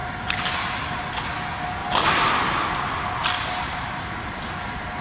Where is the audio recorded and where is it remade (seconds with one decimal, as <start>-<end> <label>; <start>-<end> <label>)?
0.0-5.0 recorded